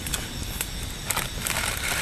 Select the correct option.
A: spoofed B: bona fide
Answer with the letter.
B